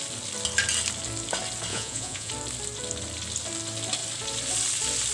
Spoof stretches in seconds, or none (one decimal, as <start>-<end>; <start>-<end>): 1.7-2.3